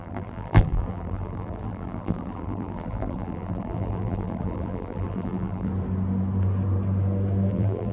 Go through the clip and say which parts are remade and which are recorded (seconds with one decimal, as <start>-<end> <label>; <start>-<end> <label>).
0.0-5.7 remade; 5.7-7.5 recorded; 7.5-7.9 remade